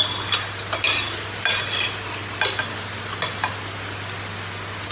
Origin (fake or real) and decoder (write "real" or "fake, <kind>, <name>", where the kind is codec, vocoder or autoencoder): real